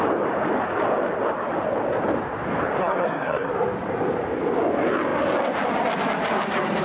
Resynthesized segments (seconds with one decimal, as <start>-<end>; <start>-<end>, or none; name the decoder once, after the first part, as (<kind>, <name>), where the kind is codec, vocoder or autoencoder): 2.8-3.5 (codec, SNAC)